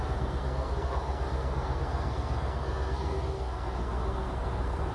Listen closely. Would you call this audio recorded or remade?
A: remade